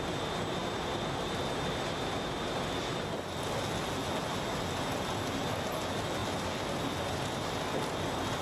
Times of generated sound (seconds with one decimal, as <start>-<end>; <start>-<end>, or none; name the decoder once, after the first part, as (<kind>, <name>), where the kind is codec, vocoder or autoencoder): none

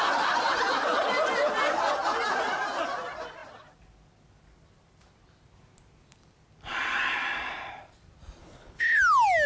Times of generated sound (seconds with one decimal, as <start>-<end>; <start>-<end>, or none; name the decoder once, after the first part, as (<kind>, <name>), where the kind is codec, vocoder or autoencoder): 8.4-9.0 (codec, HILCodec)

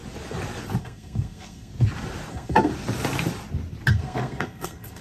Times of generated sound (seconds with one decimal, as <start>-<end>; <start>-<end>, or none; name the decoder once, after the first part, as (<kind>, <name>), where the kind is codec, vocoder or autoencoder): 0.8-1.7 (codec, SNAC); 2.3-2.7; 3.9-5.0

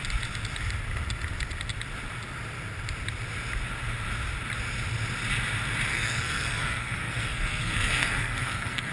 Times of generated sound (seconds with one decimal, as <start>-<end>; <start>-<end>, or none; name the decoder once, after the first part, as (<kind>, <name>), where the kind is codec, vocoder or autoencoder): 5.9-8.9 (codec, SNAC)